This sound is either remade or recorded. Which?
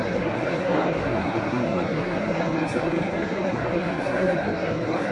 remade